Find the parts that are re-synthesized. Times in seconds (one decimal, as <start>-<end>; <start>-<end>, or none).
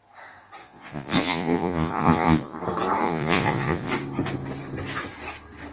0.6-2.6; 3.0-3.9